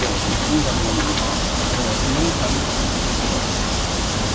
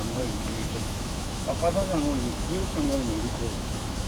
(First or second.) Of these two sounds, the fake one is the second